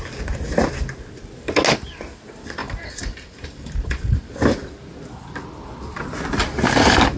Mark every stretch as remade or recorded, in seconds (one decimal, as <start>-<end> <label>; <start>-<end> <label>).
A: 0.0-2.6 recorded; 2.6-4.3 remade; 4.3-7.2 recorded